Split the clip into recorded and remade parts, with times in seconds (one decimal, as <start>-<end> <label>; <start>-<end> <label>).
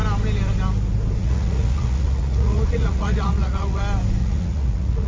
0.0-1.2 recorded; 1.2-3.8 remade; 3.8-4.2 recorded; 4.2-5.1 remade